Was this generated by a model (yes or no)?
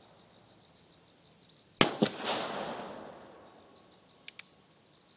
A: no